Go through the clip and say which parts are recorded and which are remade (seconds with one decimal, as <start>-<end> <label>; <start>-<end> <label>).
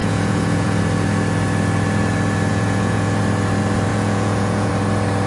0.0-0.8 remade; 0.8-2.5 recorded; 2.5-3.2 remade; 3.2-3.9 recorded; 3.9-4.7 remade; 4.7-5.3 recorded